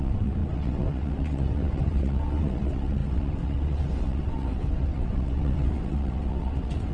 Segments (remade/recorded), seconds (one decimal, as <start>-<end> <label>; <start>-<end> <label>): 0.0-6.9 remade